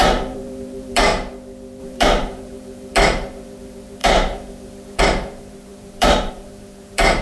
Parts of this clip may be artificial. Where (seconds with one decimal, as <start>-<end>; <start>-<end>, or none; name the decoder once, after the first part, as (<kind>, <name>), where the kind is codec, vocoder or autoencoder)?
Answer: 0.0-1.1 (vocoder, BigVGAN v2); 1.8-7.2